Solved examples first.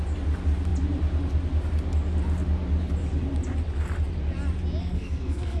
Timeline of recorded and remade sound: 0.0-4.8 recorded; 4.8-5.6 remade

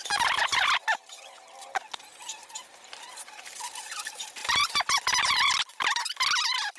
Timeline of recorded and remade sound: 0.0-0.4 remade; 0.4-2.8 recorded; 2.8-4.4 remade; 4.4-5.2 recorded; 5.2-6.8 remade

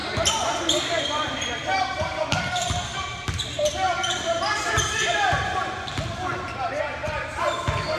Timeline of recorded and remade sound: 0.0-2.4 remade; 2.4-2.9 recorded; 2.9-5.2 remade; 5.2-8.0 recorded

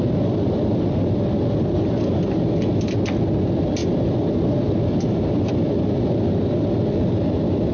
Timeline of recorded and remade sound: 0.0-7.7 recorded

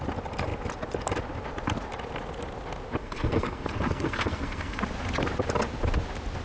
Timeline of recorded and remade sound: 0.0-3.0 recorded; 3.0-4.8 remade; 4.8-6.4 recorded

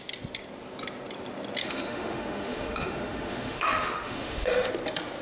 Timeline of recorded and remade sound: 0.0-1.6 recorded; 1.6-4.7 remade; 4.7-5.2 recorded